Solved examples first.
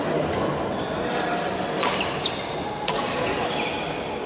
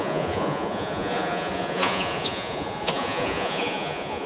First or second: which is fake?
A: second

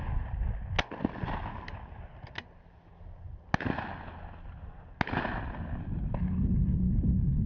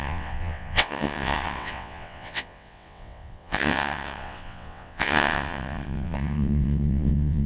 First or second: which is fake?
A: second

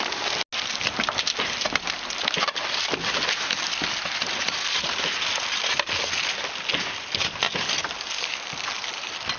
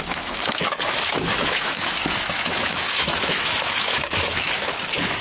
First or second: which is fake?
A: second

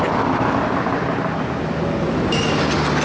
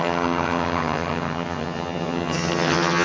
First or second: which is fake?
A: second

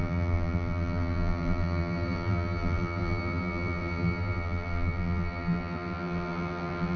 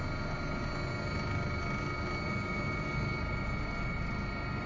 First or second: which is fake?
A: first